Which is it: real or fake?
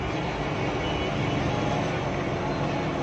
real